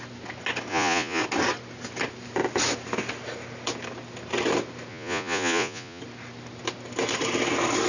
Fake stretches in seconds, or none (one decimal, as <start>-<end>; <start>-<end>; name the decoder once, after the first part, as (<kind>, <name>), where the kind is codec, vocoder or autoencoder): 0.7-1.2 (vocoder, Vocos); 4.9-6.0